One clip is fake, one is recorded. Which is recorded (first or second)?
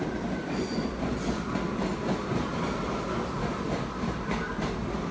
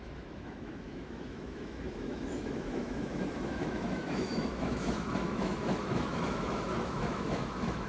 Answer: first